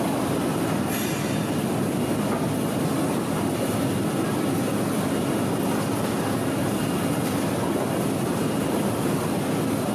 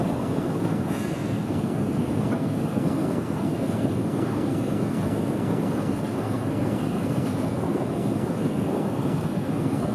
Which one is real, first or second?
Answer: first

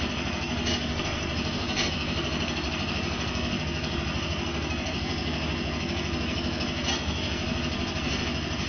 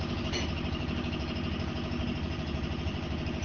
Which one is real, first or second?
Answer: second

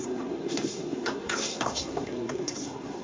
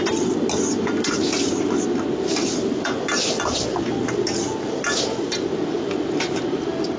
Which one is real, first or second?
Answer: second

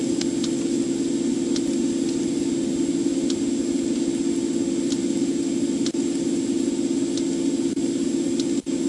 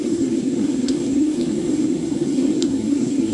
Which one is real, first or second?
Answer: first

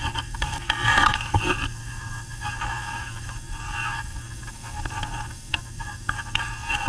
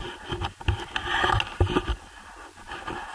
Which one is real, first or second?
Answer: second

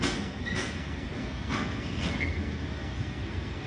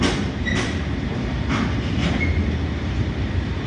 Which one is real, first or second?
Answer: second